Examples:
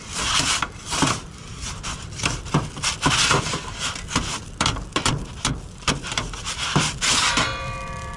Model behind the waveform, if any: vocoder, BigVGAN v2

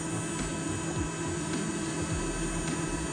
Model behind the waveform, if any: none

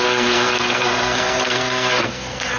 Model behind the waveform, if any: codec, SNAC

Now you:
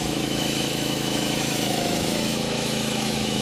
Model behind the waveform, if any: autoencoder, DAC-VAE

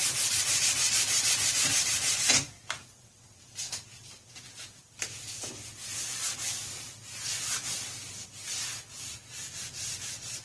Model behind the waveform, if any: none